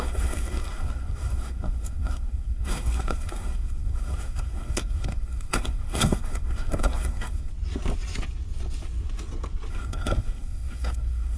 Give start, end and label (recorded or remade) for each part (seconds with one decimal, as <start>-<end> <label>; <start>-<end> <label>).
0.0-7.5 remade; 7.5-9.7 recorded; 9.7-11.4 remade